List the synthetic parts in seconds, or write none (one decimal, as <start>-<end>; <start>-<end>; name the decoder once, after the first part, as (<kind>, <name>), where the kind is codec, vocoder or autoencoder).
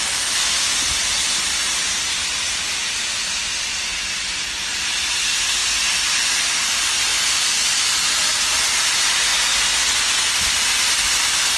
0.0-9.3 (vocoder, BigVGAN v2); 9.9-11.6